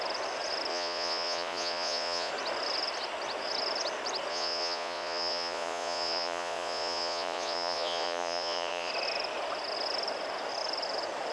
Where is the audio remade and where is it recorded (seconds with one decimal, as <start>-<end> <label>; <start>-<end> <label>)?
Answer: 0.0-0.7 recorded; 0.7-2.3 remade; 2.3-4.3 recorded; 4.3-8.9 remade; 8.9-11.3 recorded